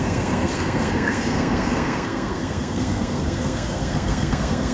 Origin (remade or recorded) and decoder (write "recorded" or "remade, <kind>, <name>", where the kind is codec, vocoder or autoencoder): remade, codec, SNAC